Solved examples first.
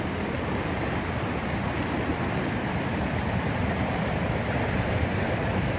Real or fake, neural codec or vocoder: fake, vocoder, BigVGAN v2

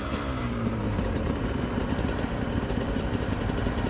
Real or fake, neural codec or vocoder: fake, vocoder, BigVGAN v2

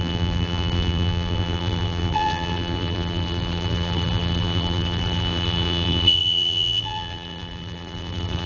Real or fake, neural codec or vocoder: fake, vocoder, BigVGAN v2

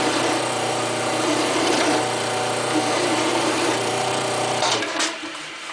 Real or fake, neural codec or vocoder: fake, vocoder, BigVGAN v2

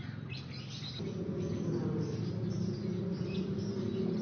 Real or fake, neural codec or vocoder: real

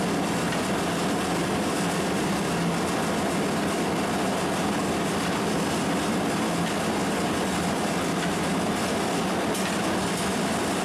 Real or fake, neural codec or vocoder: real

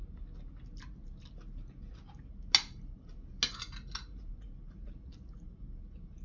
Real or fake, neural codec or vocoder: real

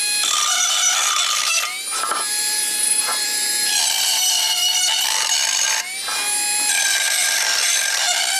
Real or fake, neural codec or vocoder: fake, vocoder, BigVGAN v2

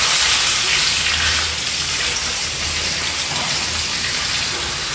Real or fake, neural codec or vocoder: real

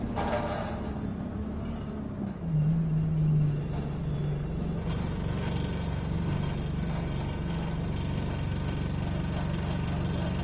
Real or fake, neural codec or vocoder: real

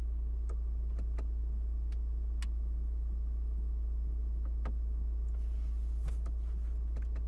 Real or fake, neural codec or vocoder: real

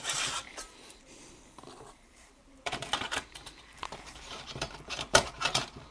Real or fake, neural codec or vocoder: fake, vocoder, BigVGAN v2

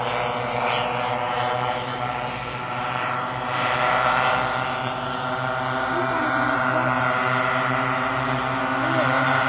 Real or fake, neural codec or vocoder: real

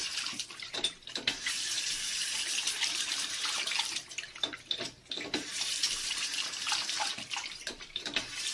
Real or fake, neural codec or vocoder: fake, vocoder, BigVGAN v2